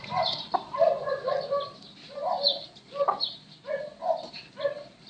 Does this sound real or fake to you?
real